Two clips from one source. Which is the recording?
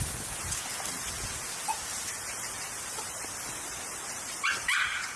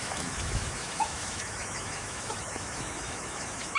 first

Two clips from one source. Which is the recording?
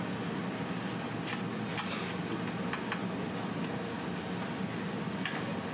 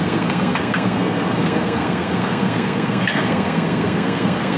first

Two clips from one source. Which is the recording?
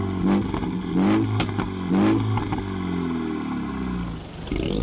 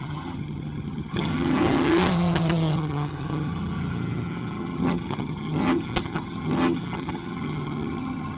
first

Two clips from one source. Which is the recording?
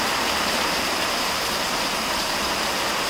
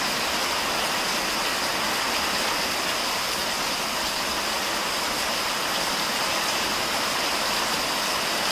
second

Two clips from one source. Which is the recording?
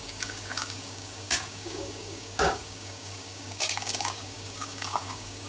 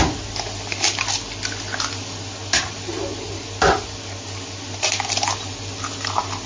second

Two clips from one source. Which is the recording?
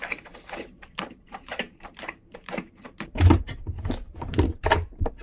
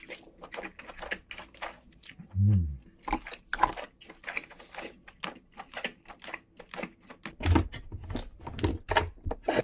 second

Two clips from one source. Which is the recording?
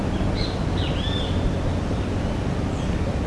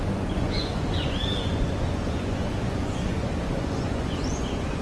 first